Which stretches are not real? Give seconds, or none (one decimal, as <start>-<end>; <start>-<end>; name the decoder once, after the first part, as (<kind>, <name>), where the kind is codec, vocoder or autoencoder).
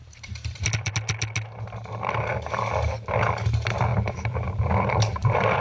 0.0-0.9 (vocoder, BigVGAN v2); 3.9-5.6